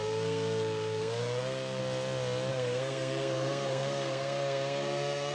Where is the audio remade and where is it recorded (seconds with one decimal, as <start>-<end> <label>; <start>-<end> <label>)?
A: 0.0-1.8 remade; 1.8-2.5 recorded; 2.5-5.3 remade